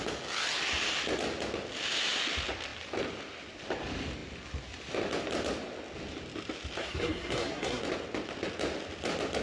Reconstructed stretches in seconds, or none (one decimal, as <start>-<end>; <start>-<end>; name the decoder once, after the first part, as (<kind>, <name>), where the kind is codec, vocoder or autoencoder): 6.8-7.8 (codec, SNAC)